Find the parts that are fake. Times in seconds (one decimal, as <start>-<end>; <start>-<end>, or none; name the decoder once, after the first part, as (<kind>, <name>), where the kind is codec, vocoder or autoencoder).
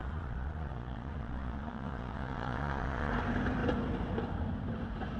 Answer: 0.0-3.1 (vocoder, Vocos)